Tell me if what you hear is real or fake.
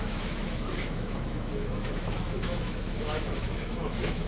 fake